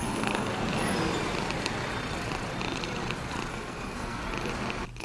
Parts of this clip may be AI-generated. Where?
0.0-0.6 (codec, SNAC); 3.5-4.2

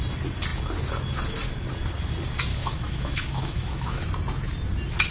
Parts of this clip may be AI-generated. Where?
2.5-4.0 (autoencoder, DAC-VAE)

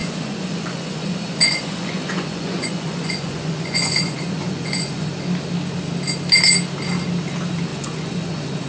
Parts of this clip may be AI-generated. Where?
0.0-5.1 (vocoder, Vocos); 7.7-8.7

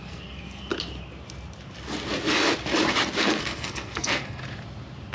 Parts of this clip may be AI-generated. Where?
0.0-0.7 (codec, SNAC); 3.2-4.4

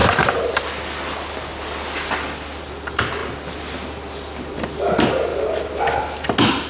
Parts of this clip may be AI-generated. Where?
none